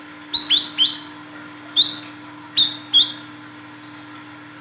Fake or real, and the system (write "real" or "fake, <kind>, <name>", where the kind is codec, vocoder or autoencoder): real